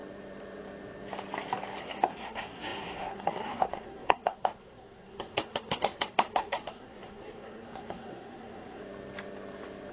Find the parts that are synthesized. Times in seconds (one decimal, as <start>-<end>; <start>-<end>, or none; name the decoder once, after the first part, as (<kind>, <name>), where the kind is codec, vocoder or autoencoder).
1.8-8.8 (codec, SNAC)